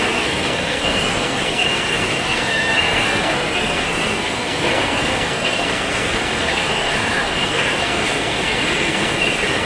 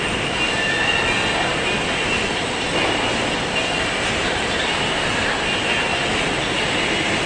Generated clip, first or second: first